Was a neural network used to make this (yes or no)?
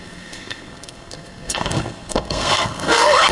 yes